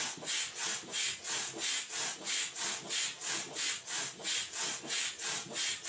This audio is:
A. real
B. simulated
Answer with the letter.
A